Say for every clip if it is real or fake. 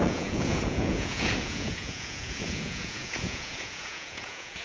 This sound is fake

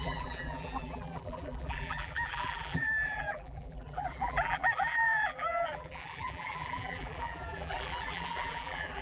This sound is fake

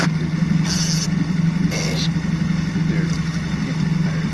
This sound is real